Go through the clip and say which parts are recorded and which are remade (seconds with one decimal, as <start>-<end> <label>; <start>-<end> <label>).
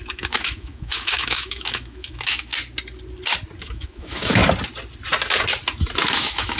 0.0-2.5 remade; 2.5-3.6 recorded; 3.6-4.4 remade; 4.4-6.1 recorded; 6.1-6.6 remade